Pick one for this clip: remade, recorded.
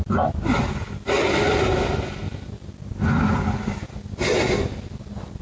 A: recorded